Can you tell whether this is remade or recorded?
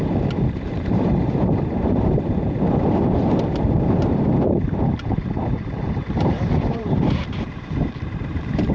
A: remade